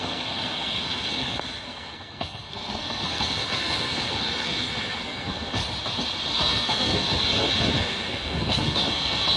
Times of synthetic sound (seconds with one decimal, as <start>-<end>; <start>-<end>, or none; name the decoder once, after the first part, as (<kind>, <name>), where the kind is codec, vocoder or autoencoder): 0.0-5.6 (codec, SNAC); 6.3-9.4